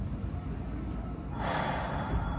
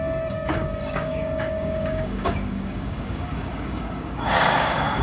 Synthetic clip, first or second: second